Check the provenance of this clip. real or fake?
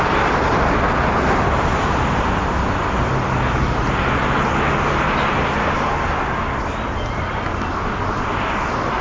real